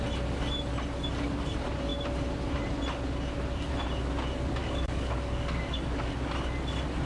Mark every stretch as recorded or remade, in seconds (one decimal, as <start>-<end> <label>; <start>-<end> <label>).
0.0-4.6 recorded; 4.6-6.1 remade; 6.1-7.1 recorded